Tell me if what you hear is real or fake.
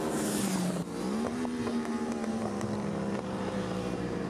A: fake